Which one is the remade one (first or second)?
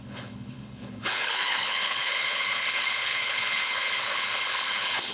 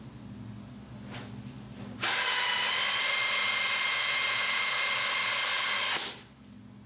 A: first